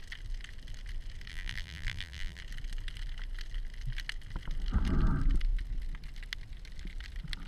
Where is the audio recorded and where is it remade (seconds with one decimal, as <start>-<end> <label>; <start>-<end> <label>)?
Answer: 0.0-1.3 recorded; 1.3-2.4 remade; 2.4-7.5 recorded